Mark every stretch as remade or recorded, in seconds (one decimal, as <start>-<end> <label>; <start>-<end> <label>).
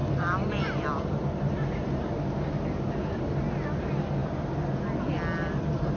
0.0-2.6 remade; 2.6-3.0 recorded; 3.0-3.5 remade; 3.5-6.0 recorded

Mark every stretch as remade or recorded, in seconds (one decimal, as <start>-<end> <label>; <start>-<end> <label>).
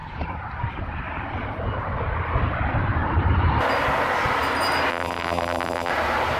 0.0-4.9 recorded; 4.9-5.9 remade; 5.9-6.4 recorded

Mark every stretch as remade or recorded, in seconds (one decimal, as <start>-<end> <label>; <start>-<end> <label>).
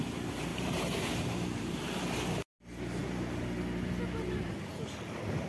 0.0-0.5 recorded; 0.5-2.0 remade; 2.0-5.5 recorded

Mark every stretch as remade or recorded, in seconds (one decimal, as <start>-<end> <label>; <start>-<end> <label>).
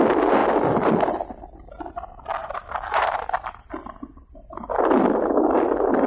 0.0-2.4 recorded; 2.4-3.7 remade; 3.7-6.1 recorded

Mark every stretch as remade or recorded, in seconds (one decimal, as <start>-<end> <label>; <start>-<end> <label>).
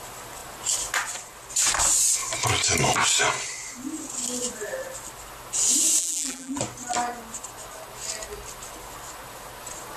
0.0-6.0 recorded; 6.0-6.6 remade; 6.6-10.0 recorded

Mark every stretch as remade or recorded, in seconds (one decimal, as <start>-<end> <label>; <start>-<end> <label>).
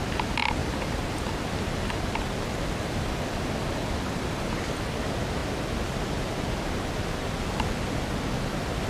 0.0-0.6 recorded; 0.6-4.9 remade; 4.9-8.9 recorded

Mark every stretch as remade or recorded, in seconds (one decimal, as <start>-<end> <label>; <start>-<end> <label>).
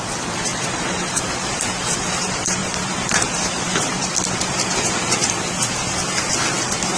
0.0-0.5 recorded; 0.5-1.2 remade; 1.2-2.6 recorded; 2.6-5.3 remade; 5.3-7.0 recorded